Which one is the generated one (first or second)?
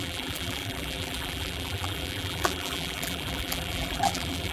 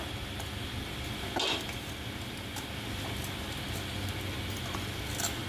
first